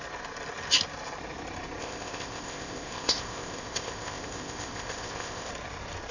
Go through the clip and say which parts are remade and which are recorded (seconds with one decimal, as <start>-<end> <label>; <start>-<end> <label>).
0.0-1.8 recorded; 1.8-5.5 remade; 5.5-6.1 recorded